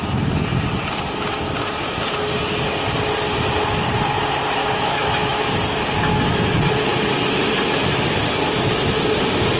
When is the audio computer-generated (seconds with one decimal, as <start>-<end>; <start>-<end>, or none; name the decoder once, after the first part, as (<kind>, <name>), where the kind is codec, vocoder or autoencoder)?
4.6-5.6 (autoencoder, DAC-VAE)